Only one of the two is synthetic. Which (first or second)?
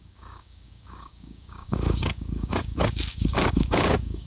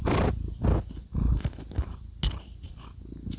first